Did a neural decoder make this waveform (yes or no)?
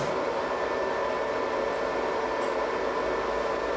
no